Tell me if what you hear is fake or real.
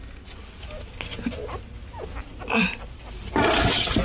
real